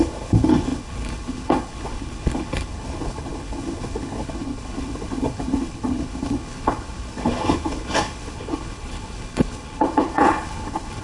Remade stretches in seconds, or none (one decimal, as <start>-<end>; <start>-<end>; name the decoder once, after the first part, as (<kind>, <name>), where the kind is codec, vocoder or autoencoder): 0.0-11.0 (codec, HILCodec)